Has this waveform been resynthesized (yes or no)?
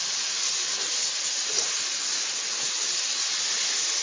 no